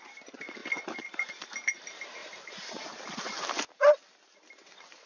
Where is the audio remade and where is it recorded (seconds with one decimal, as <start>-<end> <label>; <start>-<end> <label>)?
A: 0.0-2.2 recorded; 2.2-3.2 remade; 3.2-5.1 recorded

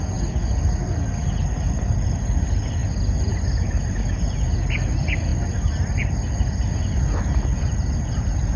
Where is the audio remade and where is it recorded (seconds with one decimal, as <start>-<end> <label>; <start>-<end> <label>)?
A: 0.0-8.6 recorded

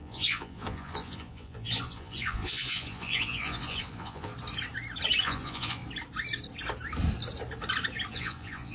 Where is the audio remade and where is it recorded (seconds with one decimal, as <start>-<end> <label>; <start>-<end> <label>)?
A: 0.0-4.3 remade; 4.3-5.2 recorded; 5.2-5.8 remade; 5.8-8.1 recorded; 8.1-8.7 remade

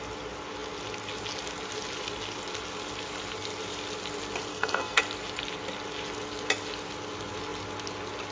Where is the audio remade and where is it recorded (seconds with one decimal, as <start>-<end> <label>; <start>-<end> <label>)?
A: 0.0-4.5 recorded; 4.5-5.0 remade; 5.0-8.3 recorded